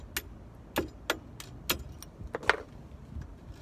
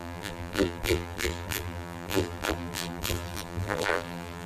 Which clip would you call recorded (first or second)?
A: first